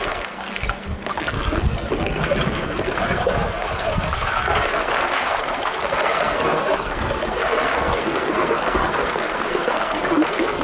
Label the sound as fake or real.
fake